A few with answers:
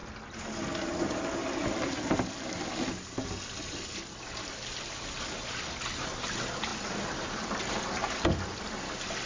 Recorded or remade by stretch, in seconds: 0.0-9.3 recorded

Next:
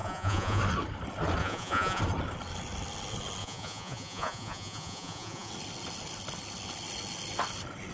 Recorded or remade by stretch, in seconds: 0.0-0.6 remade; 0.6-1.4 recorded; 1.4-2.0 remade; 2.0-3.4 recorded; 3.4-5.5 remade; 5.5-7.9 recorded

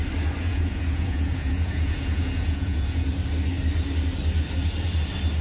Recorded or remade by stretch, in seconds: 0.0-0.5 recorded; 0.5-3.1 remade; 3.1-5.4 recorded

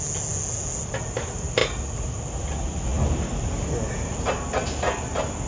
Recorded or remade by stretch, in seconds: 0.0-5.5 recorded

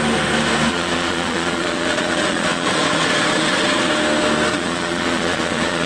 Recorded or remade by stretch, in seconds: 0.0-0.7 recorded; 0.7-3.9 remade; 3.9-4.5 recorded; 4.5-5.9 remade

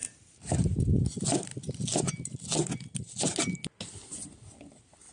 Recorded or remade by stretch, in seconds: 0.0-5.1 recorded

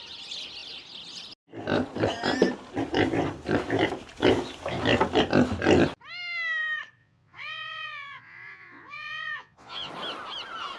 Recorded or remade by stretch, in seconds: 0.0-7.0 recorded; 7.0-9.9 remade; 9.9-10.8 recorded

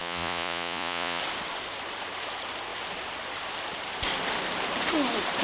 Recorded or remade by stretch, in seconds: 0.0-1.2 remade; 1.2-5.4 recorded